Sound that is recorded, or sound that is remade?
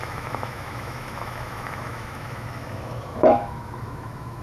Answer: remade